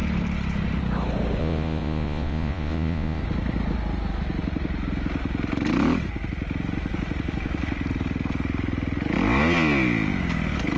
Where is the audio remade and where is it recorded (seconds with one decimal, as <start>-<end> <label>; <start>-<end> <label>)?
0.0-1.4 recorded; 1.4-3.2 remade; 3.2-10.8 recorded